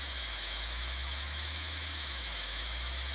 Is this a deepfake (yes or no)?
yes